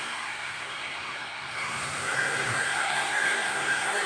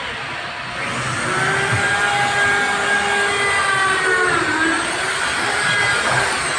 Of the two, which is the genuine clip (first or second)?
second